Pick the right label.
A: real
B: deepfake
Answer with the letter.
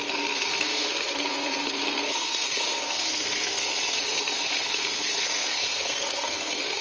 B